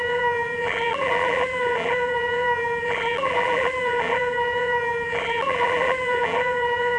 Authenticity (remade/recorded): remade